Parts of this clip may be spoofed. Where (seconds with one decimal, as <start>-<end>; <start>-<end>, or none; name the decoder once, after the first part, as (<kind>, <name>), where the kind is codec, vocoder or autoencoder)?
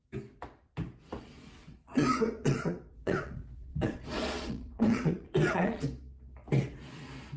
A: 1.6-5.8 (vocoder, Vocos)